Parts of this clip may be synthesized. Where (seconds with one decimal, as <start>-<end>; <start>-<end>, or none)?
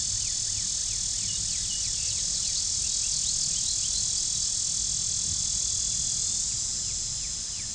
none